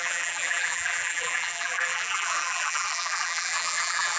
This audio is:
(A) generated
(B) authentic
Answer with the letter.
A